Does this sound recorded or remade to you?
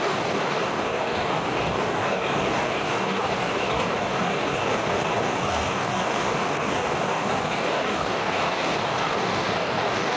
remade